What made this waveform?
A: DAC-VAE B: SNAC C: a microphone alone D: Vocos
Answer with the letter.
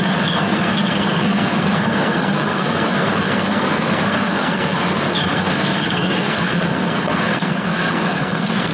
B